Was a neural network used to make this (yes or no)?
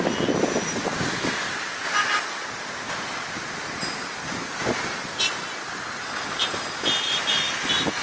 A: no